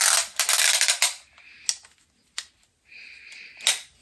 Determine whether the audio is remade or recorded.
recorded